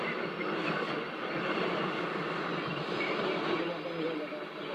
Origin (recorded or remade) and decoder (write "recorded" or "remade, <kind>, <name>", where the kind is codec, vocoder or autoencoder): remade, vocoder, BigVGAN v2